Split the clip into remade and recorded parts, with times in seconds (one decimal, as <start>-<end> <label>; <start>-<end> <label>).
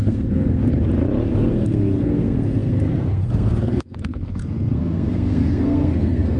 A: 0.0-0.7 remade; 0.7-1.3 recorded; 1.3-6.4 remade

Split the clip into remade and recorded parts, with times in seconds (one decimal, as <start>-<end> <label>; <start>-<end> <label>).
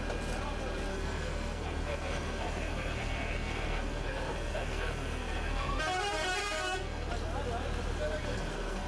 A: 0.0-0.9 recorded; 0.9-5.8 remade; 5.8-6.4 recorded; 6.4-7.1 remade; 7.1-8.2 recorded; 8.2-8.9 remade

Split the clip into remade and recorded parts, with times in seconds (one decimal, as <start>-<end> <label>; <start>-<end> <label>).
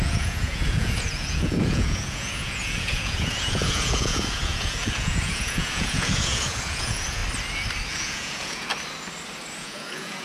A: 0.0-7.2 remade; 7.2-7.9 recorded; 7.9-8.7 remade; 8.7-9.6 recorded; 9.6-10.2 remade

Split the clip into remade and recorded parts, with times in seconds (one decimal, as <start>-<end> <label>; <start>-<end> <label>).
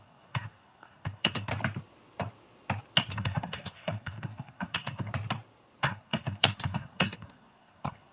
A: 0.0-1.5 remade; 1.5-3.1 recorded; 3.1-5.1 remade; 5.1-5.8 recorded; 5.8-8.1 remade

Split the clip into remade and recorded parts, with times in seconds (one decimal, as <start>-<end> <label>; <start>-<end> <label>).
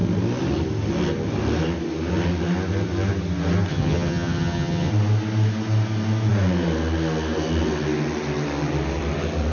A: 0.0-3.7 recorded; 3.7-4.9 remade; 4.9-9.5 recorded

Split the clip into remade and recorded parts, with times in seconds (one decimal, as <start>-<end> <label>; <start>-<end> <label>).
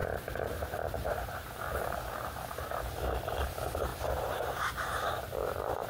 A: 0.0-3.5 remade; 3.5-3.9 recorded; 3.9-5.9 remade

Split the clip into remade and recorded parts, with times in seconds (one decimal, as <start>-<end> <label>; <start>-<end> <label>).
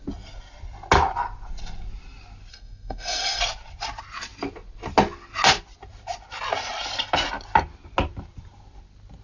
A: 0.0-2.5 recorded; 2.5-3.4 remade; 3.4-9.2 recorded